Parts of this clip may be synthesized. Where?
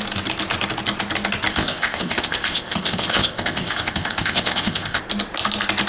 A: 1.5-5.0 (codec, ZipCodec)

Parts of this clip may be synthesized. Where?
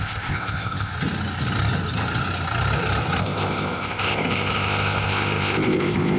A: 0.0-0.9 (codec, ZipCodec); 3.2-6.2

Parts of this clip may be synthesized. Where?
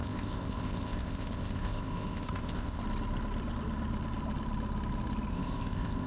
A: 0.0-2.8 (codec, ZipCodec); 5.3-6.1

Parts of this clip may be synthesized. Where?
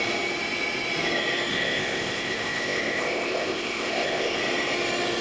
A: 1.5-4.4 (codec, ZipCodec)